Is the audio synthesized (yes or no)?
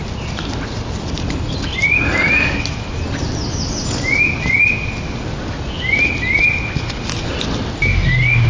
no